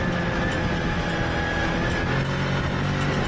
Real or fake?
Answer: real